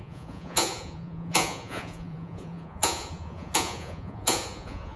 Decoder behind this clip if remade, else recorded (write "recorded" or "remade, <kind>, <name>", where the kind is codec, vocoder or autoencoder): remade, vocoder, Vocos